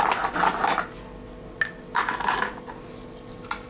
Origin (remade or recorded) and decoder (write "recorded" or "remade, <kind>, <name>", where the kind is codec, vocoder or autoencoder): recorded